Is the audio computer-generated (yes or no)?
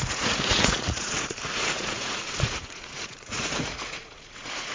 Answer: yes